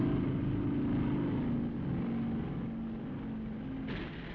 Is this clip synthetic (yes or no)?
no